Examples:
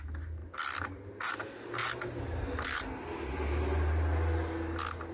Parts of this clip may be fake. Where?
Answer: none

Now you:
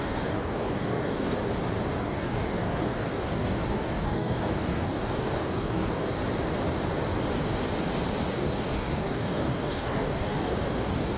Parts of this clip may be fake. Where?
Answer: 0.0-1.4 (codec, DAC); 2.0-6.2; 8.3-11.2

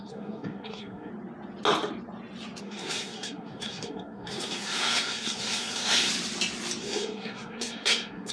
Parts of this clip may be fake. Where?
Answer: 0.0-1.1 (codec, SNAC); 2.6-6.1; 6.8-8.3

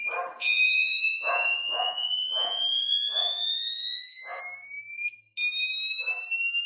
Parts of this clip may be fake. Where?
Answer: 0.4-4.4 (vocoder, Vocos)